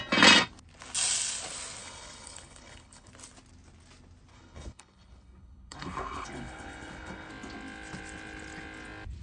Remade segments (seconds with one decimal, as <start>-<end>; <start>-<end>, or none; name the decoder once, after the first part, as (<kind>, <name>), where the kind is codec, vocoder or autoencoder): 1.8-3.1 (codec, HILCodec); 4.3-7.3